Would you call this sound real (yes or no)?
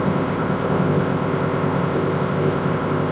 no